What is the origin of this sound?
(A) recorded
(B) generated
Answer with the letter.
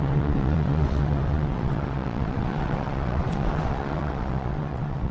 B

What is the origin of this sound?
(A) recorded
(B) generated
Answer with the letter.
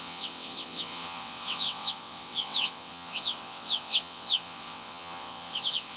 B